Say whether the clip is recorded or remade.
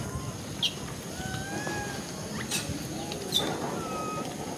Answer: recorded